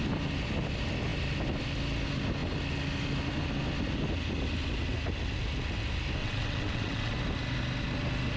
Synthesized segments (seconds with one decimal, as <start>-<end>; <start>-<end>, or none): 6.2-7.1